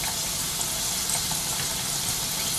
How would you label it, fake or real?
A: real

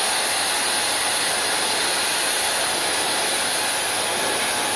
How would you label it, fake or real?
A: real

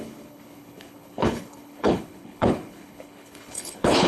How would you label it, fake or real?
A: fake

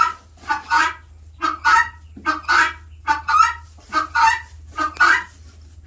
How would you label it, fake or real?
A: real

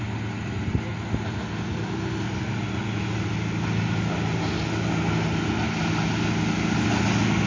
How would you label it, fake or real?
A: real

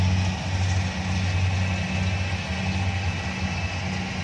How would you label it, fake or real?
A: real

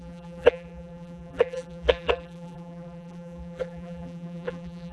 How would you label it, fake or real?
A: fake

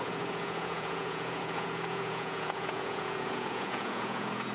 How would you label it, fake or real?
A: fake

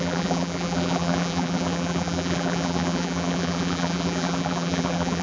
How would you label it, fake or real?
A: fake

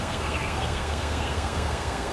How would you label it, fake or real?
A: fake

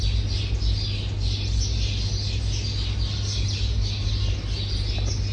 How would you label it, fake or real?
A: real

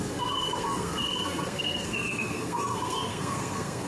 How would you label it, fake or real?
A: fake